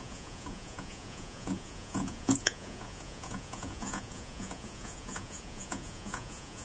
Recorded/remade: remade